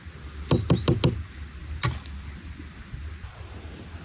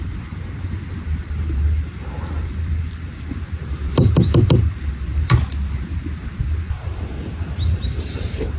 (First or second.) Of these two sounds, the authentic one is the first